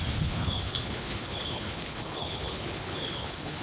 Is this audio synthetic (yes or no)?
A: yes